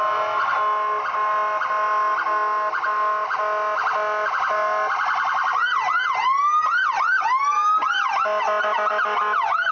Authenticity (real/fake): real